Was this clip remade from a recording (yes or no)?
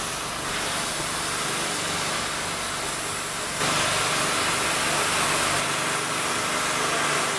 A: no